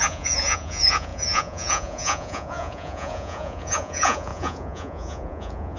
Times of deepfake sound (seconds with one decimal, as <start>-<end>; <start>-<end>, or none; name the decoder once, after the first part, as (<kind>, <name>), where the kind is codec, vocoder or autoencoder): 0.0-5.8 (vocoder, Vocos)